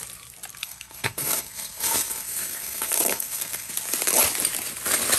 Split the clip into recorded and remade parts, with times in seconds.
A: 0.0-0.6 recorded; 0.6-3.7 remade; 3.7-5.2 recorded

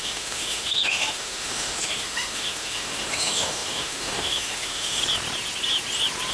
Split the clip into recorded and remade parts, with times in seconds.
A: 0.0-5.0 remade; 5.0-6.3 recorded

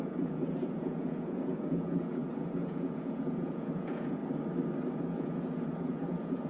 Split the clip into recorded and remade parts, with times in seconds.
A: 0.0-4.2 remade; 4.2-5.0 recorded; 5.0-6.5 remade

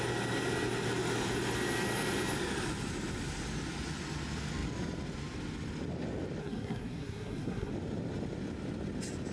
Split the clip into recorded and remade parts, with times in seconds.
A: 0.0-6.4 recorded; 6.4-7.7 remade; 7.7-9.3 recorded

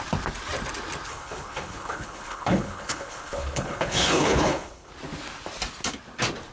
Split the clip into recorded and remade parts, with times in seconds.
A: 0.0-1.1 recorded; 1.1-4.9 remade; 4.9-6.5 recorded